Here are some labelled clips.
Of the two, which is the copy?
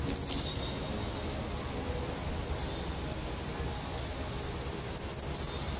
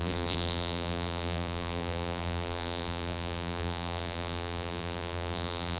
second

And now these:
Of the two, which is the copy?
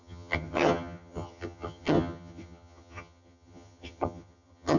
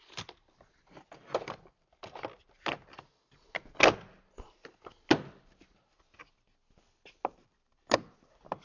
first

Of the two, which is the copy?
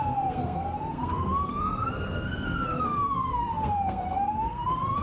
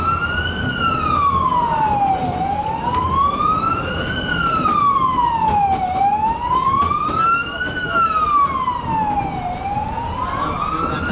first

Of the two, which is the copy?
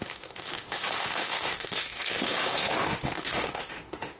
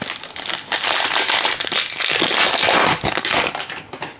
first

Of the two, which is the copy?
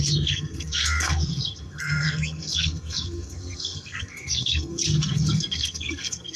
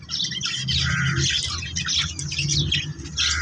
first